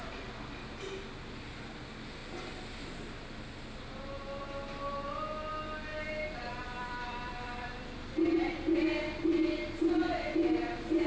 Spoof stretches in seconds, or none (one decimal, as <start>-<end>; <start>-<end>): 5.9-8.5